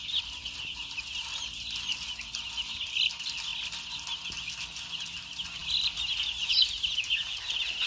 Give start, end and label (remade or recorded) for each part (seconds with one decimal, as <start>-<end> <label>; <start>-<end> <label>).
0.0-7.9 recorded